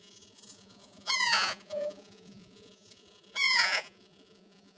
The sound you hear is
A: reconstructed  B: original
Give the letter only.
A